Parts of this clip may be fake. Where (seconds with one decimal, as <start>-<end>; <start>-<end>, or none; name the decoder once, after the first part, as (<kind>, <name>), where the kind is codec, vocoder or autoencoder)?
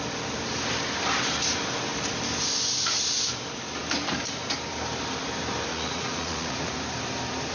5.7-6.7 (vocoder, Vocos)